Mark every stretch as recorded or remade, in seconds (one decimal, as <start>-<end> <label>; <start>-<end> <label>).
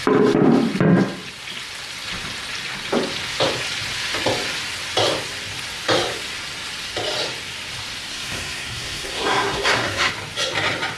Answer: 0.0-8.1 recorded; 8.1-10.1 remade; 10.1-11.0 recorded